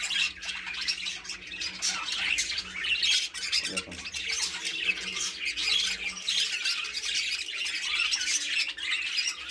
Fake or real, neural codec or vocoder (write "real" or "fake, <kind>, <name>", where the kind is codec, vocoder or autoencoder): real